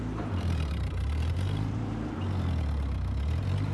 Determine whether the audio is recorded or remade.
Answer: remade